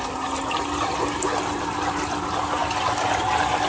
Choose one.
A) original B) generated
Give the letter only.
A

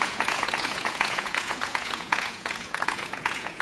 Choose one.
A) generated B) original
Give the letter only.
A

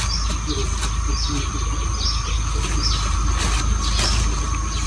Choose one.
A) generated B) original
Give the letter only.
B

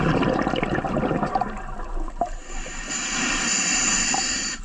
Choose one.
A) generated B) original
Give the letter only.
B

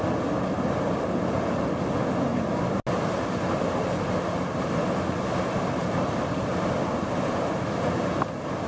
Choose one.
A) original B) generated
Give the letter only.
A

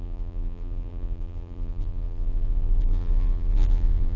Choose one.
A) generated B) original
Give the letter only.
A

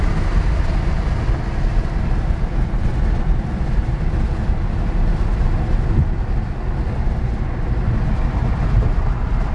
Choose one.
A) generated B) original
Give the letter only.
B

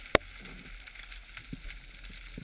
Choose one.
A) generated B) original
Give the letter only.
B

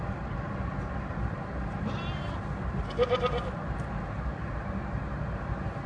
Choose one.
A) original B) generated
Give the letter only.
B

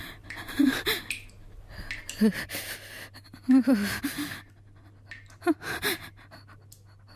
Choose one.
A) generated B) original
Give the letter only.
B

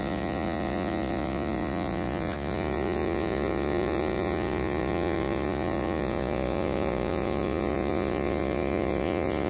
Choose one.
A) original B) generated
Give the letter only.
B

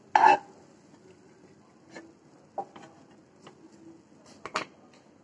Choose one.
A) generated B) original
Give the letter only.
B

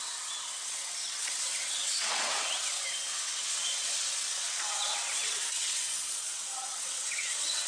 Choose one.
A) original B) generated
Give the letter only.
B